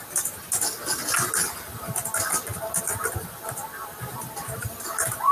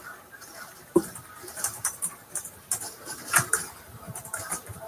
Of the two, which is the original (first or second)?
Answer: first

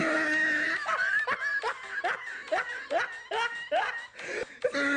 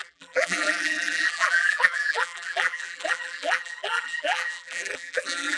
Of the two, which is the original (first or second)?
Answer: first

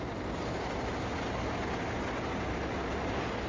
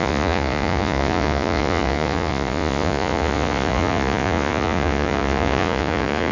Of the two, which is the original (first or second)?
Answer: first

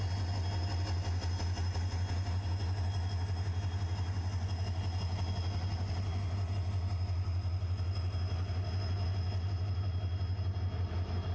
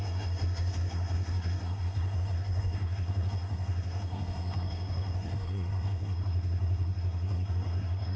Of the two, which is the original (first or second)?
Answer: first